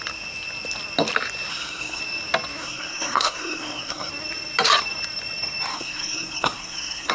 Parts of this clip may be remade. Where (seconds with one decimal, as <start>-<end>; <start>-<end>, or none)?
1.5-2.0; 2.6-4.1; 5.7-7.1